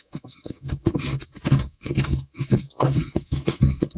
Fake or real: fake